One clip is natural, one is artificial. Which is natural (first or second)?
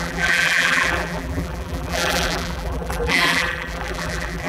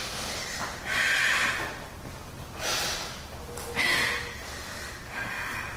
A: second